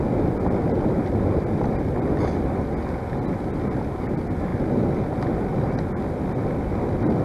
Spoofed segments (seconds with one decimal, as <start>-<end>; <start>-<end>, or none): none